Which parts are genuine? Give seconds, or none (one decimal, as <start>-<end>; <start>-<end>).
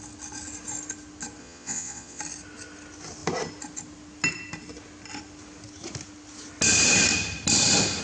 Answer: 0.0-1.4; 2.2-8.0